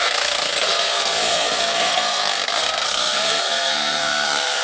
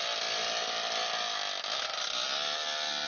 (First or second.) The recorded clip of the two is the second